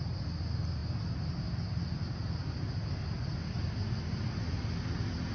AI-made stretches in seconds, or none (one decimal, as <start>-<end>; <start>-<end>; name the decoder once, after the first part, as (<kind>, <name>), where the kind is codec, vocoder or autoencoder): none